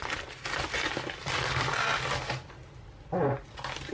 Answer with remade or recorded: recorded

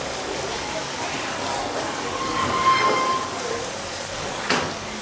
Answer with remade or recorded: remade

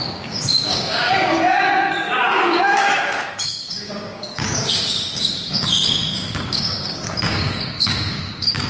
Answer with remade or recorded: remade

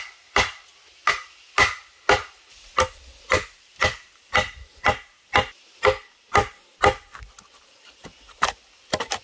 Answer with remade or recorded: recorded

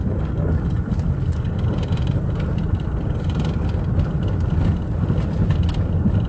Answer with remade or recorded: recorded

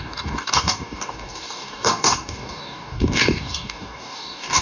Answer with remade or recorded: remade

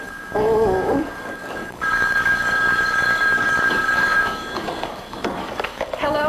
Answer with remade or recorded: remade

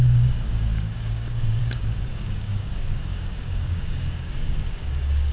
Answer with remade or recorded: remade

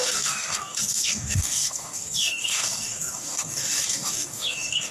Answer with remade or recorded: remade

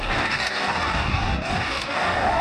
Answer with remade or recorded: remade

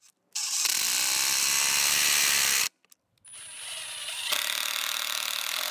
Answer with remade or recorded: recorded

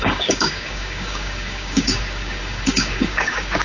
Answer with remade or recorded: remade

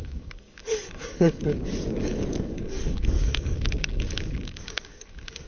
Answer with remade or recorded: remade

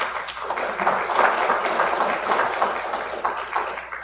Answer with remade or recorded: recorded